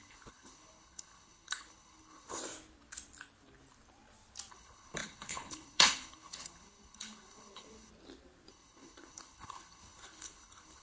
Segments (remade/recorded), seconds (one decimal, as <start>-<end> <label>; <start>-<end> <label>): 0.0-2.4 remade; 2.4-4.5 recorded; 4.5-7.9 remade; 7.9-8.5 recorded; 8.5-10.8 remade